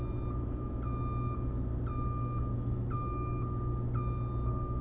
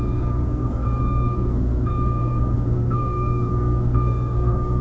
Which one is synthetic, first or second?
second